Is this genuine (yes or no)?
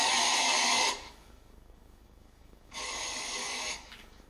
no